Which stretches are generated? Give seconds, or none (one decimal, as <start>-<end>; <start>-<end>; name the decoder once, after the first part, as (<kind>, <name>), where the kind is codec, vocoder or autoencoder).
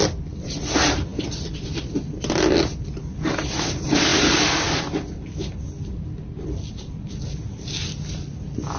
none